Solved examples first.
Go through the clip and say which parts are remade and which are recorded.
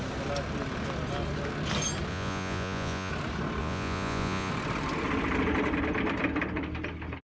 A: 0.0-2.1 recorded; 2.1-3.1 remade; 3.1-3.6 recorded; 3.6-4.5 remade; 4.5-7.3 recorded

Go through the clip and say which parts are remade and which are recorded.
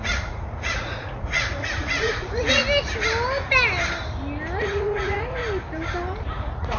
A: 0.0-2.6 remade; 2.6-4.6 recorded; 4.6-5.4 remade; 5.4-6.2 recorded; 6.2-6.8 remade